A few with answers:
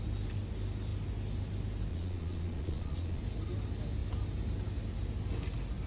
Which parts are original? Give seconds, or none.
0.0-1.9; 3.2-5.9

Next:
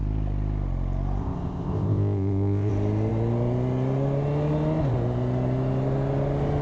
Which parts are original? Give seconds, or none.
0.0-1.2; 2.7-6.6